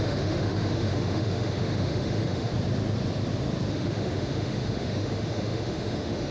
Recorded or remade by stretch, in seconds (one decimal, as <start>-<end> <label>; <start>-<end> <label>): 0.0-2.5 remade; 2.5-3.7 recorded; 3.7-6.3 remade